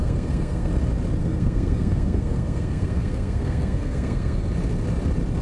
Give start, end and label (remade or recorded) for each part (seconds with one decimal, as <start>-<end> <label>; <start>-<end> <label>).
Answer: 0.0-0.7 remade; 0.7-1.2 recorded; 1.2-4.4 remade; 4.4-5.4 recorded